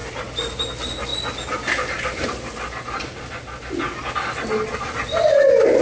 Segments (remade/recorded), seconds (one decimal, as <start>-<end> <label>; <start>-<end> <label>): 0.0-5.8 recorded